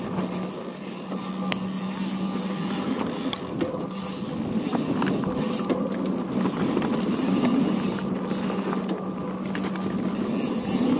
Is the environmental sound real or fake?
real